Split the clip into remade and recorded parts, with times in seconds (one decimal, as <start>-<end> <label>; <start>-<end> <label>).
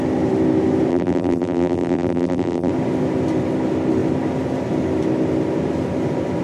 0.0-0.9 recorded; 0.9-2.7 remade; 2.7-6.4 recorded